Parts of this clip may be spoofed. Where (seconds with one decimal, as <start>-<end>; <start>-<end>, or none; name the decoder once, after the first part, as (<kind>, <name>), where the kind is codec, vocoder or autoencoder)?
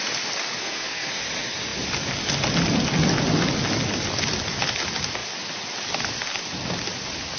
0.6-1.1 (codec, SNAC)